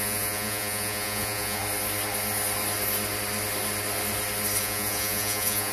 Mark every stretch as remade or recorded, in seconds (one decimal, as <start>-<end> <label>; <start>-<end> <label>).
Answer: 0.0-1.6 remade; 1.6-4.6 recorded; 4.6-5.7 remade